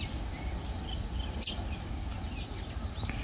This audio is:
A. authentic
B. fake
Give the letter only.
A